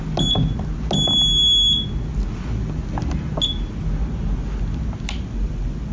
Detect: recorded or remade recorded